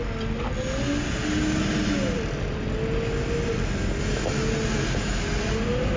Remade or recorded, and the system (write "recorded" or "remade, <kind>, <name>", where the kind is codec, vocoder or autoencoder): recorded